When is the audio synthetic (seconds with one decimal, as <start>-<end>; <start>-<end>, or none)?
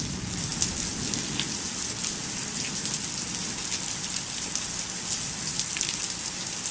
none